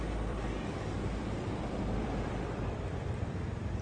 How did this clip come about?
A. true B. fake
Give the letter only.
B